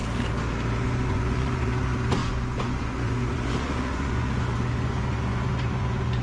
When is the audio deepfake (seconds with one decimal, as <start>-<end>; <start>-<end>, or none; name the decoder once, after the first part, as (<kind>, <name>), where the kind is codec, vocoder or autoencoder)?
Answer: 0.8-6.2 (vocoder, Vocos)